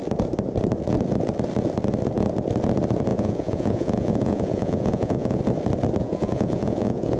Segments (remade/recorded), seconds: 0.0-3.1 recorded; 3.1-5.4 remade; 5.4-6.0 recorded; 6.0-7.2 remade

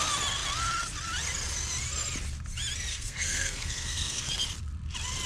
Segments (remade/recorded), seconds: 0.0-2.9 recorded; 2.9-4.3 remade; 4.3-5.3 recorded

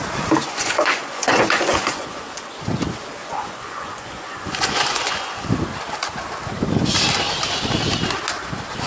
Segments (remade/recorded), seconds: 0.0-0.4 recorded; 0.4-2.5 remade; 2.5-3.2 recorded; 3.2-5.5 remade; 5.5-8.9 recorded

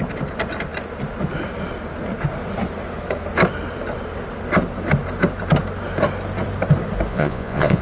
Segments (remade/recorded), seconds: 0.0-7.1 recorded; 7.1-7.8 remade

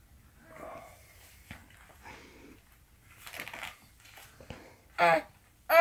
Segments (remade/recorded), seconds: 0.0-5.8 recorded

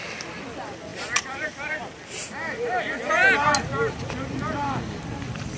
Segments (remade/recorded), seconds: 0.0-5.6 recorded